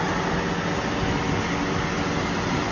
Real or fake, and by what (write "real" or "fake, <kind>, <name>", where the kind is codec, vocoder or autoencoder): real